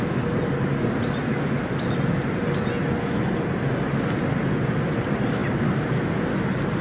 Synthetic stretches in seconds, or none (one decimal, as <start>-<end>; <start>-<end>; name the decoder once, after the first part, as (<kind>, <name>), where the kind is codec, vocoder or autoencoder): none